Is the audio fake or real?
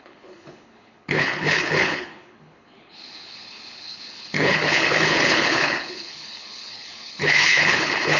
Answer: fake